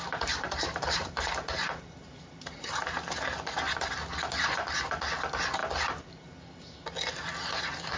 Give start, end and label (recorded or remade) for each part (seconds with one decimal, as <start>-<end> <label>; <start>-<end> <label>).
0.0-3.2 remade; 3.2-8.0 recorded